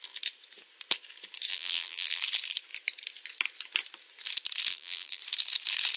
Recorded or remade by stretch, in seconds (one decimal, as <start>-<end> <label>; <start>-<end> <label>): 0.0-1.5 recorded; 1.5-2.2 remade; 2.2-4.7 recorded; 4.7-5.2 remade; 5.2-6.0 recorded